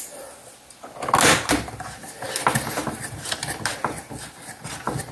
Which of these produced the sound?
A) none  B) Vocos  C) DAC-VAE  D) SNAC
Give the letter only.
A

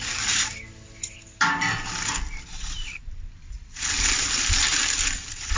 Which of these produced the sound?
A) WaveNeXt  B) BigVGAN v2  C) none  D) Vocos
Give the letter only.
B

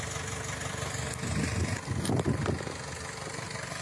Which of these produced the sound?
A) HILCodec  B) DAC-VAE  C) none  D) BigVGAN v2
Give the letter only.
C